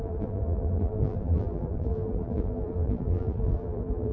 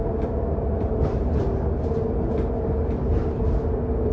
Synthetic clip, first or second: first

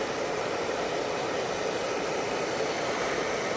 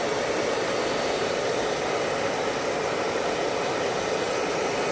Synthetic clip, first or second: first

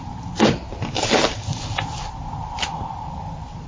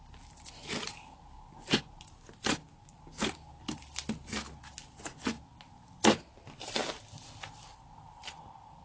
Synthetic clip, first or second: first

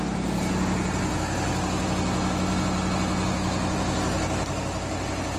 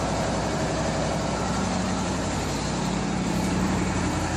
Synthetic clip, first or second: second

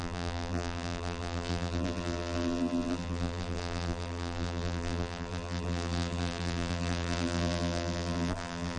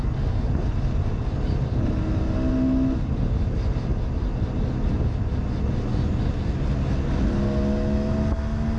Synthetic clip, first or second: first